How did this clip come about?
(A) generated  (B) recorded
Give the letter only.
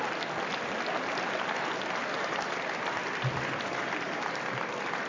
B